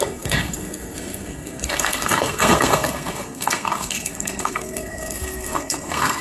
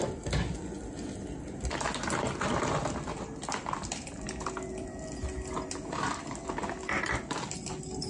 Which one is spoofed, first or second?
first